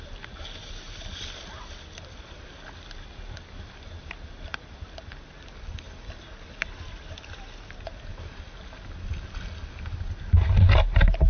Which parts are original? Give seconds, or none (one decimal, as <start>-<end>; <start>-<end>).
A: 0.0-11.3